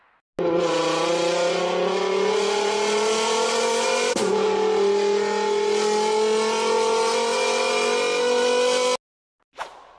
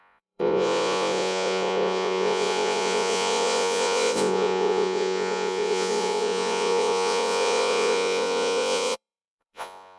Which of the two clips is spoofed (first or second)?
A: second